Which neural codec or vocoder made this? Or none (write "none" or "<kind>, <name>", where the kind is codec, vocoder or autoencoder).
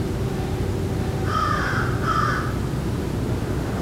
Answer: none